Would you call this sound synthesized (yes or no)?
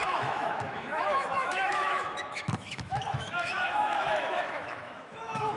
yes